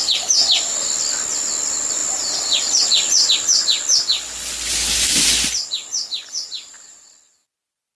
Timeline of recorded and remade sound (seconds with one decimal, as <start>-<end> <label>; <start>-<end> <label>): 0.0-6.2 recorded; 6.2-7.1 remade; 7.1-8.0 recorded